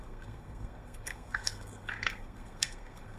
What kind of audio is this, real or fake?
fake